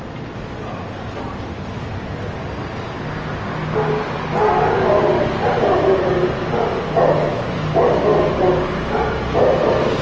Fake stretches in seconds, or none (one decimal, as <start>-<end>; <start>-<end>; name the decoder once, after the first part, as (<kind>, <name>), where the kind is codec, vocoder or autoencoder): none